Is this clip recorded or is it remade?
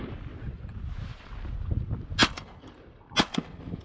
recorded